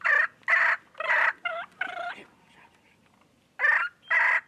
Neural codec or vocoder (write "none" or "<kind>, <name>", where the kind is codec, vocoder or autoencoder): none